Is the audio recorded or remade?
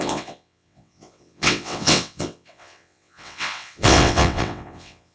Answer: remade